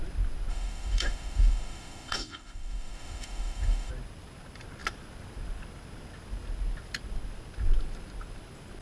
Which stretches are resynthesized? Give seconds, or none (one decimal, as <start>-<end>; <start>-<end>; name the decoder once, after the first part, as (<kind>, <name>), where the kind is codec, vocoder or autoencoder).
0.5-3.9 (autoencoder, DAC-VAE)